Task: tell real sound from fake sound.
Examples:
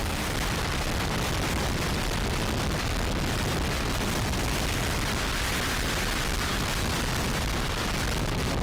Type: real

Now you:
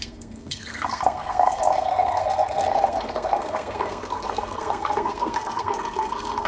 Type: fake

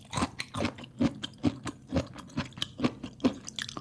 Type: real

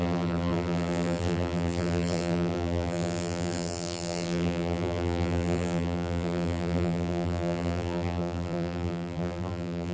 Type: fake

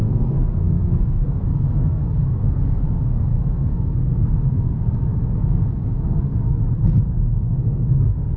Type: fake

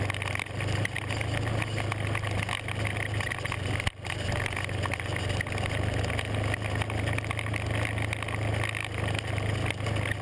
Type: real